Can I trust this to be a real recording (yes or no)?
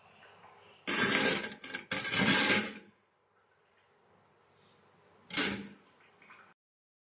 yes